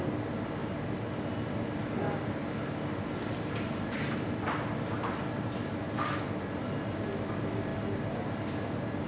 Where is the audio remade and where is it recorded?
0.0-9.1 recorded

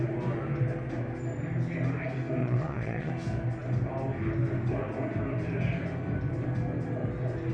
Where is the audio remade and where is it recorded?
0.0-2.4 recorded; 2.4-3.1 remade; 3.1-7.5 recorded

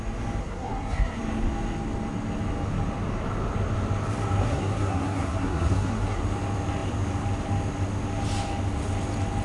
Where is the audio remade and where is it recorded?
0.0-0.4 recorded; 0.4-1.2 remade; 1.2-4.4 recorded; 4.4-6.2 remade; 6.2-9.4 recorded

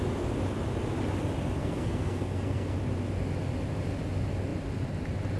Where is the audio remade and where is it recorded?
0.0-1.6 recorded; 1.6-2.8 remade; 2.8-5.4 recorded

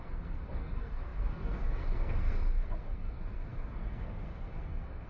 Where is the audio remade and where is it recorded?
0.0-5.1 remade

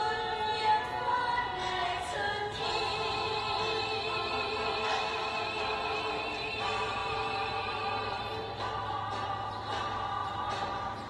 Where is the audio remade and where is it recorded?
0.0-7.0 recorded; 7.0-8.2 remade; 8.2-10.2 recorded; 10.2-10.7 remade; 10.7-11.1 recorded